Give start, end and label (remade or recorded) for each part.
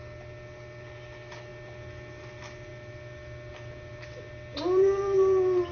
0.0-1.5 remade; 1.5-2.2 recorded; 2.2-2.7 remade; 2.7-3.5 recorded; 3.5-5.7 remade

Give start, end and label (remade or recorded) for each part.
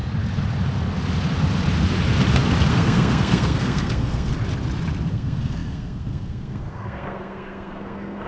0.0-2.7 recorded; 2.7-4.3 remade; 4.3-5.1 recorded; 5.1-8.3 remade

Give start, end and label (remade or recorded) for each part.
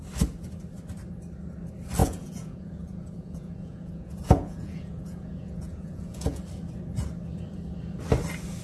0.0-2.0 recorded; 2.0-6.4 remade; 6.4-8.6 recorded